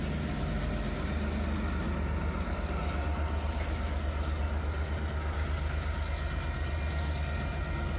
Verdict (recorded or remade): recorded